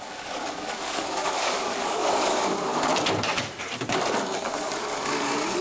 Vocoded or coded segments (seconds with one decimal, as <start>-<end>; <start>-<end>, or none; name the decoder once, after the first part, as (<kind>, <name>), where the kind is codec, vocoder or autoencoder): 0.0-2.7 (codec, DAC); 4.4-5.6